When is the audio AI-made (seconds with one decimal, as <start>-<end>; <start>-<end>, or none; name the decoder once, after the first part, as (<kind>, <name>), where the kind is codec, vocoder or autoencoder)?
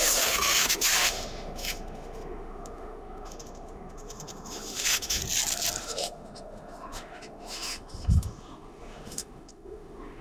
0.0-5.2 (autoencoder, DAC-VAE); 5.8-10.2